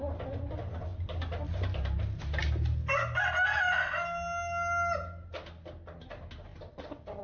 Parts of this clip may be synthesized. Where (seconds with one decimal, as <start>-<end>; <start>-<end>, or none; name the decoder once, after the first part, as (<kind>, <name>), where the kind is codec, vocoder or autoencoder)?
none